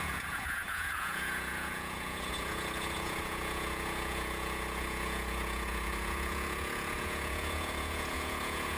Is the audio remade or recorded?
remade